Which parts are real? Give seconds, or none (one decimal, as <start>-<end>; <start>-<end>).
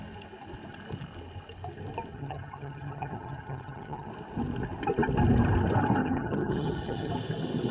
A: 0.0-2.1; 4.1-6.0; 7.1-7.7